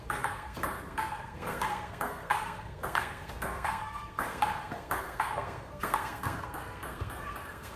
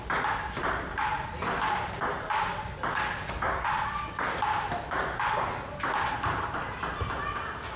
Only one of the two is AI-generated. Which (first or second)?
first